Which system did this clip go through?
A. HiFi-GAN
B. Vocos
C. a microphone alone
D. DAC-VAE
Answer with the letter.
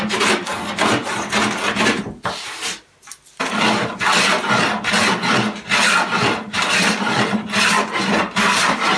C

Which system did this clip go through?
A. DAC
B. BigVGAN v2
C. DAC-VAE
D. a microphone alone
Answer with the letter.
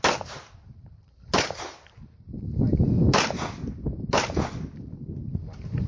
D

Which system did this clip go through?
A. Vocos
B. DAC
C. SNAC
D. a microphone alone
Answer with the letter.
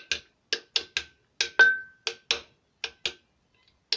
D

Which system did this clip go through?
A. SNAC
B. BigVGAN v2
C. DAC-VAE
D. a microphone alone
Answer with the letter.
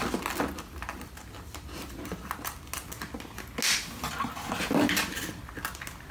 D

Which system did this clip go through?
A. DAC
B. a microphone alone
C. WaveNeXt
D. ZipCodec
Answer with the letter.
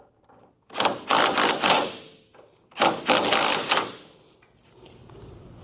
B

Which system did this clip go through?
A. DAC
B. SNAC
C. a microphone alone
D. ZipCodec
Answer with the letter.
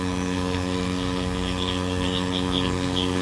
B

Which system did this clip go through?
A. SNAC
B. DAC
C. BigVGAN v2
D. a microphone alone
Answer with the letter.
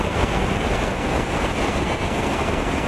A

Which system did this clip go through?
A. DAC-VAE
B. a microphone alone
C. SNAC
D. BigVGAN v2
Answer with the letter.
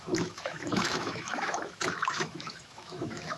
A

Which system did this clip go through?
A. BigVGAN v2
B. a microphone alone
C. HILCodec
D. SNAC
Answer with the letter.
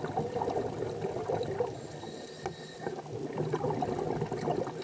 B